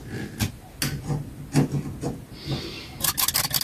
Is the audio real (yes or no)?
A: yes